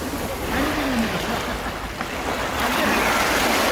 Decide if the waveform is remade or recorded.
recorded